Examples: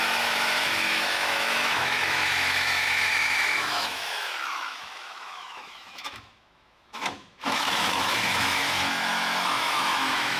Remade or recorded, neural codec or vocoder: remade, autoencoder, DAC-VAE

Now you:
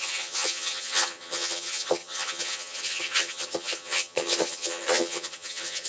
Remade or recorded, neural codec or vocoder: remade, vocoder, HiFi-GAN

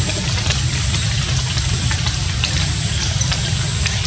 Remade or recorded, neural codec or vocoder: recorded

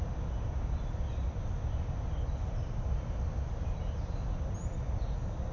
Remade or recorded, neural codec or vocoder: recorded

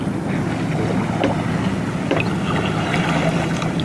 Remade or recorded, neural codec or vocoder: recorded